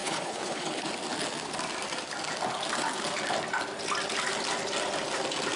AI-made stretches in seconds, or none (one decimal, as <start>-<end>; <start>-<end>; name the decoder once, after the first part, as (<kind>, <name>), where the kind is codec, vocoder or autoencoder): 0.0-0.9 (codec, HILCodec)